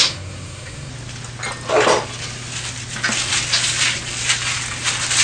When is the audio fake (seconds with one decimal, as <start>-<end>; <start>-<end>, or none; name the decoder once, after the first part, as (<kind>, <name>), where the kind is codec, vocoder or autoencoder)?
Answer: 0.0-0.9 (codec, SNAC)